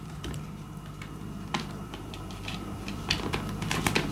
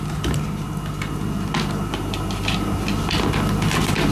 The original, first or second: second